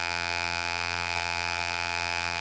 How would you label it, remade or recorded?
remade